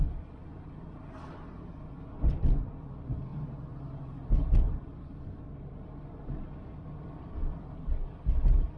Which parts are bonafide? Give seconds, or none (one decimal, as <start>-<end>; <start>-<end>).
0.4-1.3; 3.3-4.6